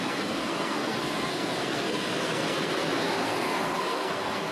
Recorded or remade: remade